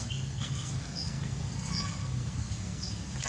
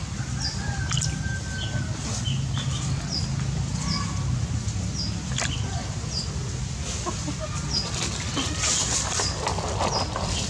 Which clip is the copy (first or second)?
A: first